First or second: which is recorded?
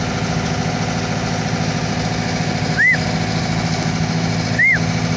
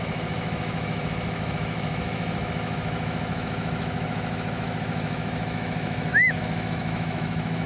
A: first